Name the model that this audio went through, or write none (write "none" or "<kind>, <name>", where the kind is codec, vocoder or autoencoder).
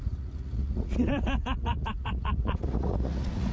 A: vocoder, Vocos